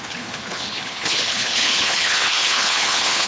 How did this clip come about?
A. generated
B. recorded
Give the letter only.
A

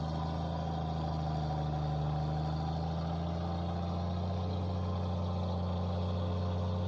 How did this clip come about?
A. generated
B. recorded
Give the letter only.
B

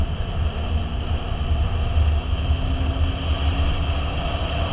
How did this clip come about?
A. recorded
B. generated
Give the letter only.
A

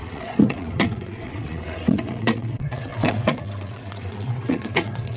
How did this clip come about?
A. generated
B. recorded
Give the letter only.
A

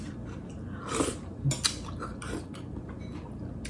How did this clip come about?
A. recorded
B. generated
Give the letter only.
A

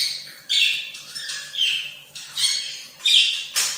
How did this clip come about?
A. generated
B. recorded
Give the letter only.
B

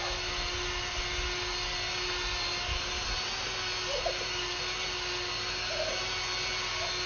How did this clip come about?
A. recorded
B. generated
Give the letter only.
A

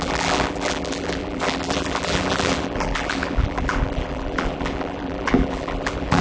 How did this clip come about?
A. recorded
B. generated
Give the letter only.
B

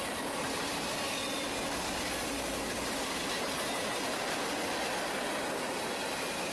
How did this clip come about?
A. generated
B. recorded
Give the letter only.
B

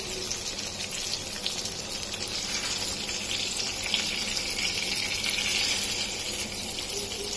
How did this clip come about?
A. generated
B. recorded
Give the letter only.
B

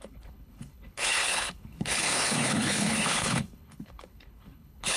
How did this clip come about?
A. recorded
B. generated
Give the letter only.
B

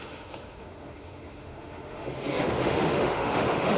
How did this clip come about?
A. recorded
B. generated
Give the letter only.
B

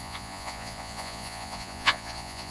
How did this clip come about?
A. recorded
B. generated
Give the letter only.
B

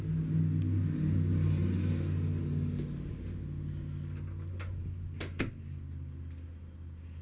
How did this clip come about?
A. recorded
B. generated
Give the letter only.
A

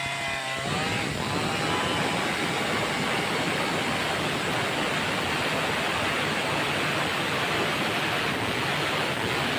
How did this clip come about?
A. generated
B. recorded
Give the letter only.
B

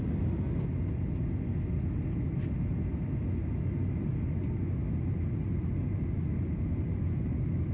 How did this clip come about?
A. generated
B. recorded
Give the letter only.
B